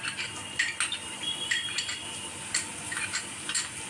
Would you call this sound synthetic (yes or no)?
no